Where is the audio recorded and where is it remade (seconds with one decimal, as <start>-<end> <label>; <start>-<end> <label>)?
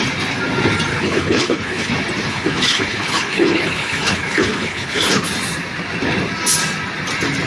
0.0-0.9 recorded; 0.9-1.9 remade; 1.9-2.3 recorded; 2.3-5.3 remade; 5.3-7.5 recorded